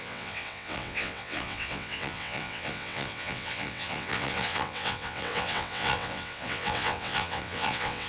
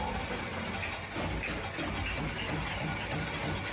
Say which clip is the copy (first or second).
first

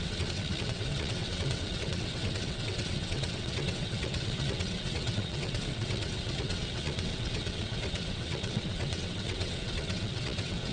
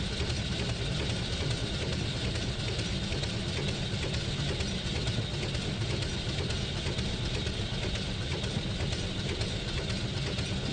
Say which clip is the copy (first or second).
first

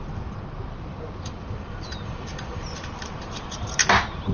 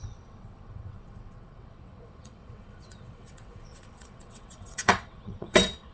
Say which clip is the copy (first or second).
second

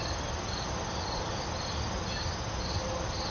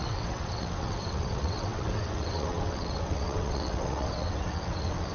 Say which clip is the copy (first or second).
second